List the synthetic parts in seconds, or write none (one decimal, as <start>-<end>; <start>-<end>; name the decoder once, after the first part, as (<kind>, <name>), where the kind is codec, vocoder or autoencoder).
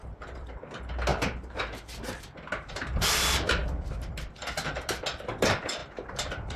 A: 1.1-1.6 (vocoder, BigVGAN v2); 5.8-6.6